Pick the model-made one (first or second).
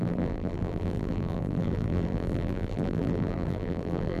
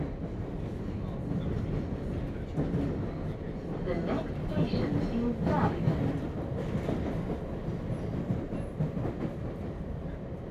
first